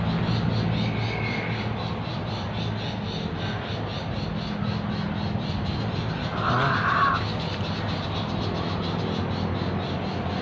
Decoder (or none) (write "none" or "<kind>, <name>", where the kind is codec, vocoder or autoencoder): none